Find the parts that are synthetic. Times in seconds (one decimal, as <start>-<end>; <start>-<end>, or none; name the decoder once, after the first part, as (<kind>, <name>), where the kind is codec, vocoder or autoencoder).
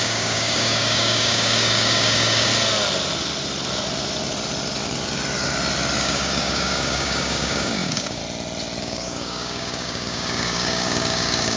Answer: 0.0-2.5 (codec, DAC); 6.0-8.2; 8.8-11.6